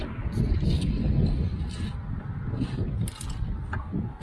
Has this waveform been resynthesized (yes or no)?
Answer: no